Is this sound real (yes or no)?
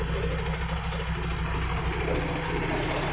yes